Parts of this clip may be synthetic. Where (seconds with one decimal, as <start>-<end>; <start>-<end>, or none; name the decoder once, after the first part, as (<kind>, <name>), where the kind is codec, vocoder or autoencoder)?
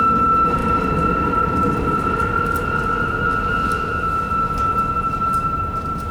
none